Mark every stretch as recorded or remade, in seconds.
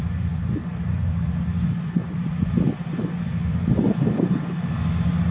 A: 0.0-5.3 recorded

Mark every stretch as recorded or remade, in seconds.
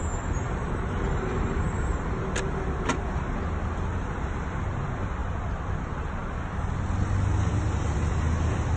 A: 0.0-8.8 recorded